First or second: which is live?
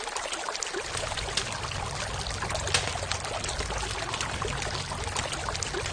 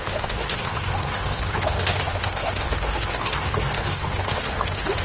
first